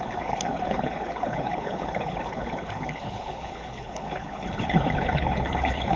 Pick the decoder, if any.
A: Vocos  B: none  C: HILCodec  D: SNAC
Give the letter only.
C